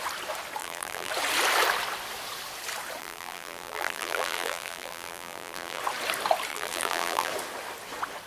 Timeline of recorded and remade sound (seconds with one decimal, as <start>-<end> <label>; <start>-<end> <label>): 0.0-0.6 recorded; 0.6-1.1 remade; 1.1-3.0 recorded; 3.0-5.8 remade; 5.8-6.5 recorded; 6.5-7.3 remade; 7.3-8.3 recorded